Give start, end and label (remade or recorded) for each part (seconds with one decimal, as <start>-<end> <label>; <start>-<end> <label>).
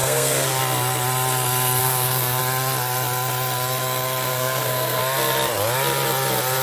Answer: 0.0-0.6 remade; 0.6-1.8 recorded; 1.8-2.4 remade; 2.4-4.3 recorded; 4.3-5.0 remade; 5.0-6.6 recorded